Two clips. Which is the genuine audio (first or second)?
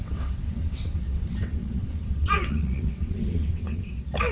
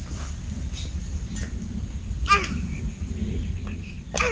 second